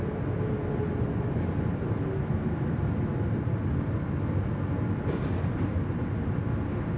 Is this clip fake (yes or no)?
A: no